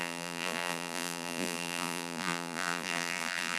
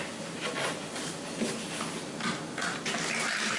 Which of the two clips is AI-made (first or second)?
first